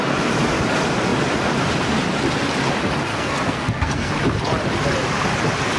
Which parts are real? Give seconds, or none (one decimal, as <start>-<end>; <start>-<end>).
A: 0.0-3.1; 4.1-5.8